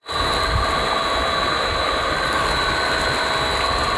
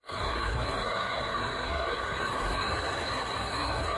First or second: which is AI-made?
second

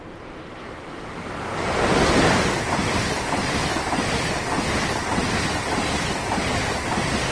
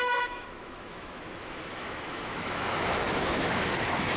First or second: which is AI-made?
second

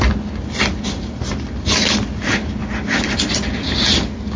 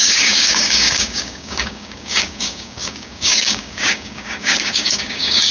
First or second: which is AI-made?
second